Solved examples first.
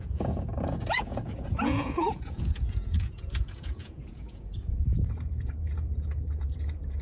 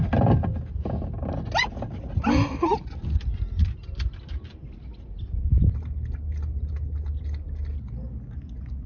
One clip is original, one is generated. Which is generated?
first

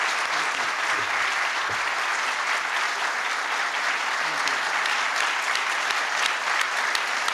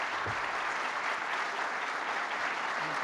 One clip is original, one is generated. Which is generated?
second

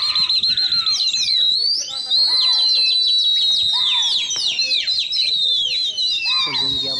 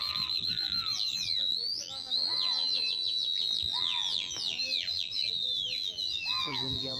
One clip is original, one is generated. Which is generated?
second